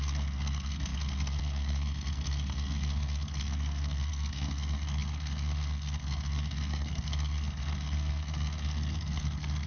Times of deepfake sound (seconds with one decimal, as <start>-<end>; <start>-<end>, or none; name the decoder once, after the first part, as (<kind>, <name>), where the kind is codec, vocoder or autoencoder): 0.0-9.7 (codec, SNAC)

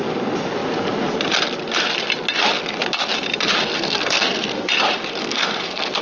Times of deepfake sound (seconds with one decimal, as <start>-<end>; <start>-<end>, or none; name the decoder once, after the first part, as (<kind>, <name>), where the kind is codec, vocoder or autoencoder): 3.7-4.7 (codec, SNAC); 5.2-6.0

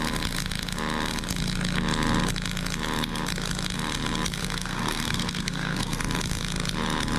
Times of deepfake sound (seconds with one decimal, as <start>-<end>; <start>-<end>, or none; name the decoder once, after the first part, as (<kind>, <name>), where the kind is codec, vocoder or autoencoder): 4.4-6.0 (codec, SNAC)

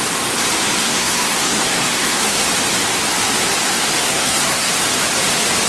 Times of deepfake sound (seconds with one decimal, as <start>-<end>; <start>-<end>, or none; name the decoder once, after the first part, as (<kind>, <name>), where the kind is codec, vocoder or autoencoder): 0.8-2.5 (codec, SNAC); 4.0-4.7

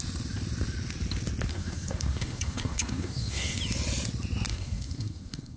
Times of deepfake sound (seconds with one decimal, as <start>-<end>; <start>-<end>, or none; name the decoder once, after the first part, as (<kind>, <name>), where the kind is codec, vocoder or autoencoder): 1.5-3.6 (codec, SNAC); 4.5-5.6